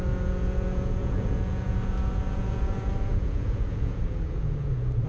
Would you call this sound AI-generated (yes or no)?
yes